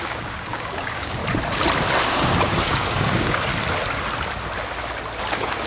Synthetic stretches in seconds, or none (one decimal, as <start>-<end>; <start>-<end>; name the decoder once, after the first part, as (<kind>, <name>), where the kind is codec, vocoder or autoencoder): 0.0-1.2 (codec, DAC); 2.1-3.5; 5.2-5.7